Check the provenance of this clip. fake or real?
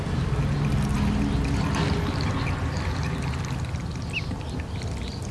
real